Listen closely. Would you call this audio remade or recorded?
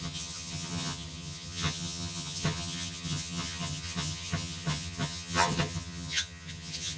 remade